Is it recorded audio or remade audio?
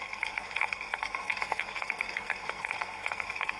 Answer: remade